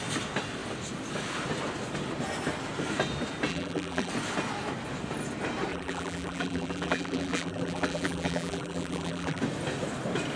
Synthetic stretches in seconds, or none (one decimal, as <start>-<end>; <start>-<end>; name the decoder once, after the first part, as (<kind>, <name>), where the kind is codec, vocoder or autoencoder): 3.5-4.1 (vocoder, BigVGAN v2); 5.7-9.4